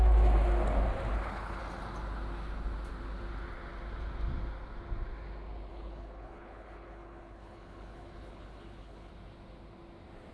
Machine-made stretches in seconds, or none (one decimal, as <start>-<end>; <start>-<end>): 1.1-1.6; 5.7-9.1

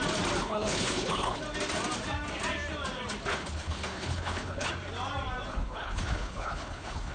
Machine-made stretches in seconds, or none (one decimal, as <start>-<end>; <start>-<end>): 0.4-1.4; 3.3-4.7; 5.5-7.1

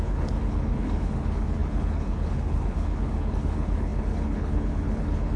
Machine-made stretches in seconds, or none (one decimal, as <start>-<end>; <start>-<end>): 0.0-5.4

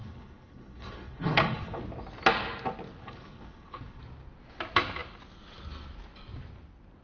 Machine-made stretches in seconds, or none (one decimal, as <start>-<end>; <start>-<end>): 0.0-1.8; 3.0-4.0